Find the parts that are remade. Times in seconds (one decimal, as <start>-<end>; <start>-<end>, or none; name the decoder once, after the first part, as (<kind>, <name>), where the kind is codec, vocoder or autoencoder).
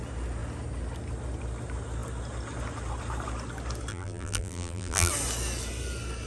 3.9-5.1 (vocoder, BigVGAN v2)